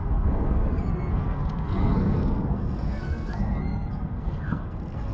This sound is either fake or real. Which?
fake